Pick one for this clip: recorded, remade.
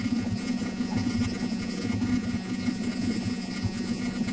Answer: remade